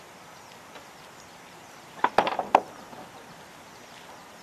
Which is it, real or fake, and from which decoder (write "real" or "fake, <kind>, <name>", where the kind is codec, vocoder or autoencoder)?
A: fake, vocoder, BigVGAN v2